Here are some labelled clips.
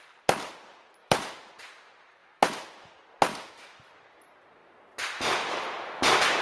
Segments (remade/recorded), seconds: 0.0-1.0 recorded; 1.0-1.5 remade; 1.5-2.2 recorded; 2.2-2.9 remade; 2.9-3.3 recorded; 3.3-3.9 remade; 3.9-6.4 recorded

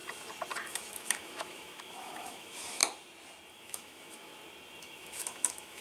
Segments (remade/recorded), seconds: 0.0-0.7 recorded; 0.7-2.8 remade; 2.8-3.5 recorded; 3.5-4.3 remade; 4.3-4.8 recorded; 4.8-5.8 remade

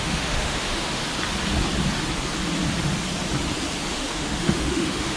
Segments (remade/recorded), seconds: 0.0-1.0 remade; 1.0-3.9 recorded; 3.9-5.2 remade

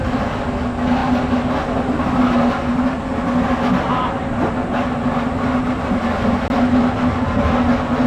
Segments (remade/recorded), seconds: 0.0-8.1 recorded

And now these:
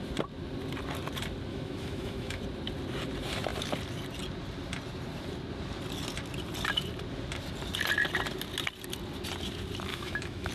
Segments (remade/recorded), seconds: 0.0-1.5 recorded; 1.5-2.4 remade; 2.4-9.9 recorded; 9.9-10.5 remade

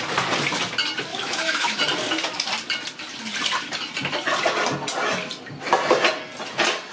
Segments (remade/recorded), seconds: 0.0-1.1 recorded; 1.1-1.8 remade; 1.8-6.9 recorded

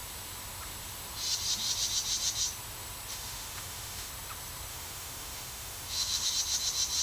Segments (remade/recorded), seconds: 0.0-3.1 recorded; 3.1-4.1 remade; 4.1-4.7 recorded; 4.7-6.3 remade; 6.3-7.0 recorded